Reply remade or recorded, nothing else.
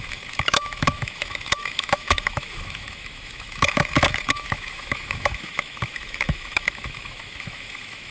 remade